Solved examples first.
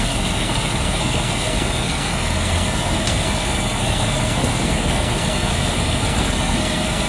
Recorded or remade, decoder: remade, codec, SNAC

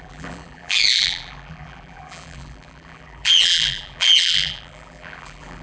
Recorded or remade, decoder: remade, vocoder, BigVGAN v2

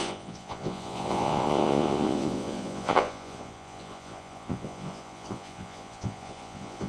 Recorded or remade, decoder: remade, vocoder, Vocos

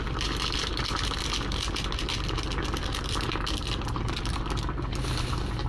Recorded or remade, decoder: recorded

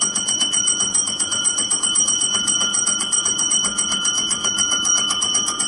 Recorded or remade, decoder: remade, vocoder, Vocos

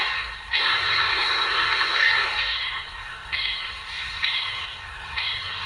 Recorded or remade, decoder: remade, codec, SNAC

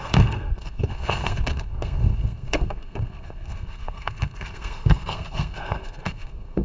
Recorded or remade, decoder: remade, codec, SNAC